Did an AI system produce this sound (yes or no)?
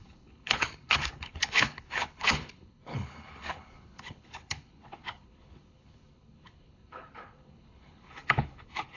yes